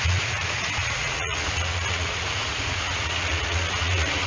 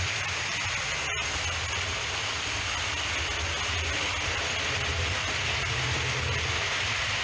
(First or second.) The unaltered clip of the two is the second